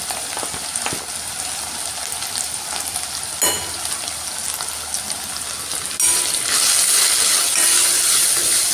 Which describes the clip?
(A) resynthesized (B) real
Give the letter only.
B